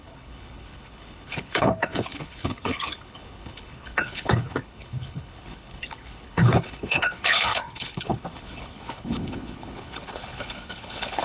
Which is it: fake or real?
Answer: fake